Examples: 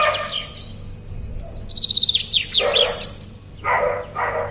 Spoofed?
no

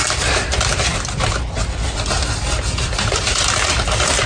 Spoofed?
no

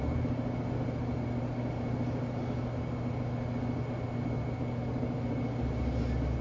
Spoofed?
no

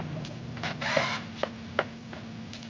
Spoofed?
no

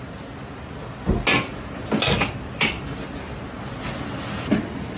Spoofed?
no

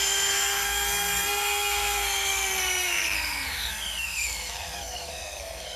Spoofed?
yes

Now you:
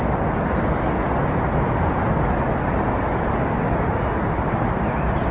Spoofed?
no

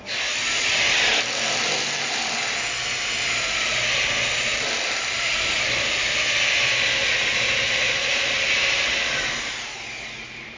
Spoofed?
no